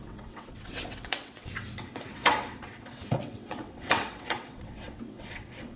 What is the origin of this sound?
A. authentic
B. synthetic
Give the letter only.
B